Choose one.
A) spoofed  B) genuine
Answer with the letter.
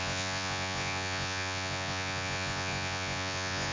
A